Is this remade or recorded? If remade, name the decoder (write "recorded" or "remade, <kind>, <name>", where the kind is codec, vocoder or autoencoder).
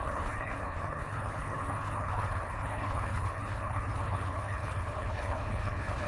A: remade, codec, HILCodec